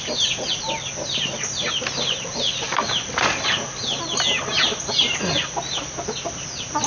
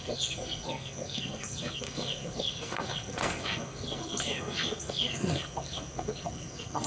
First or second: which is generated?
second